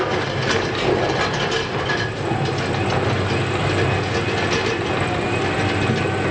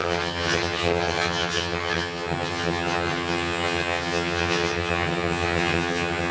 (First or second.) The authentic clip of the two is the first